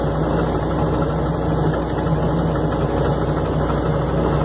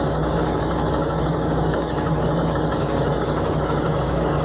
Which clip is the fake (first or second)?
second